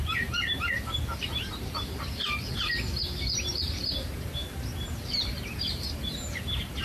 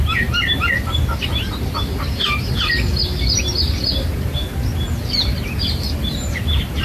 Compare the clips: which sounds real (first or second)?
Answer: second